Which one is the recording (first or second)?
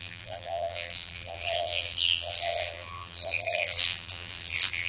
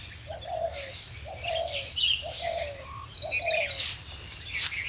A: second